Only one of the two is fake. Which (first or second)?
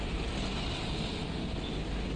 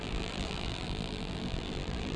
second